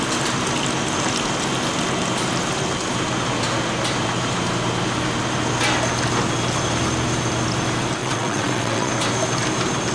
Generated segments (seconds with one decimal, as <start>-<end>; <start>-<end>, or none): 8.0-8.9